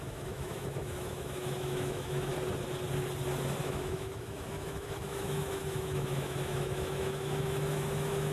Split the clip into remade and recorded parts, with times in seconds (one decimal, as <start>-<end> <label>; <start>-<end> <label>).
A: 0.0-2.3 remade; 2.3-3.6 recorded; 3.6-8.3 remade